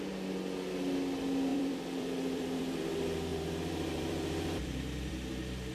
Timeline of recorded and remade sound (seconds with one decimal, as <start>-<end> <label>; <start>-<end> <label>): 0.0-1.5 recorded; 1.5-2.8 remade; 2.8-3.3 recorded; 3.3-5.1 remade; 5.1-5.7 recorded